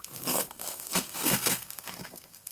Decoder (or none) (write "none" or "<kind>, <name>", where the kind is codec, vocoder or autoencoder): codec, SNAC